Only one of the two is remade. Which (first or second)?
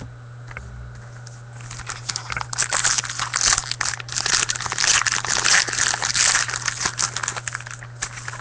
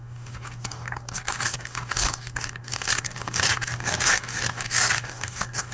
second